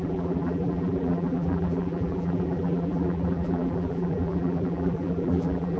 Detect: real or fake fake